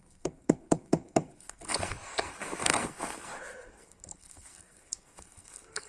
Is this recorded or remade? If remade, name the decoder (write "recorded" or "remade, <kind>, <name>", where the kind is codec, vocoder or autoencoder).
remade, codec, SNAC